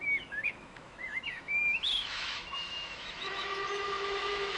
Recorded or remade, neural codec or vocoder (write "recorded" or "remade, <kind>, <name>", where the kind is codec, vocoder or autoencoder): remade, autoencoder, DAC-VAE